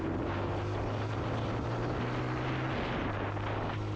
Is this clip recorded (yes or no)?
yes